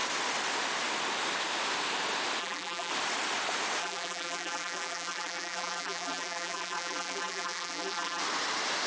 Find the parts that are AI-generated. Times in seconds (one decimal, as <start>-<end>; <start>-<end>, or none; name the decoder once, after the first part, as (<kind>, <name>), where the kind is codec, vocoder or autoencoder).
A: 2.4-2.9 (vocoder, BigVGAN v2); 3.8-8.2